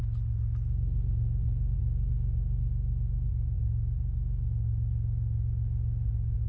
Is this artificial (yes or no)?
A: no